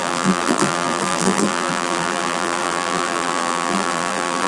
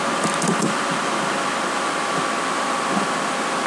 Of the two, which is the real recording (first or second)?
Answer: second